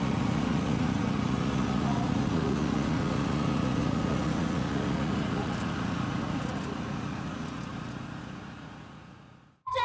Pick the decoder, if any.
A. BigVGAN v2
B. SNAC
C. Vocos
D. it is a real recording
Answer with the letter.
C